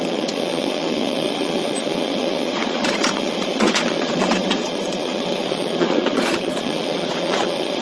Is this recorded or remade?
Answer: remade